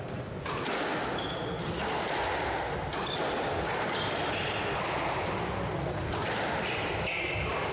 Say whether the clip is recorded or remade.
recorded